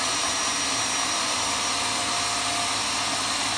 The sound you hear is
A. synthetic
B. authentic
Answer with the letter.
B